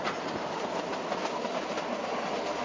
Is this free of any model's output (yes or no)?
yes